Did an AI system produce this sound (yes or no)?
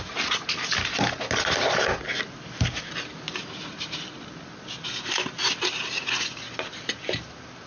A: no